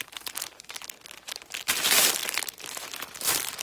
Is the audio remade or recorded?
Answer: remade